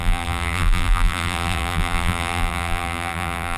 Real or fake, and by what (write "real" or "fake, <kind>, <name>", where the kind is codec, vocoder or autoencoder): fake, vocoder, BigVGAN v2